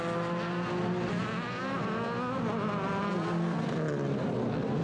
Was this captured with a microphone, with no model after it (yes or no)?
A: yes